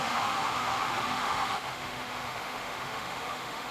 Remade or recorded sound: remade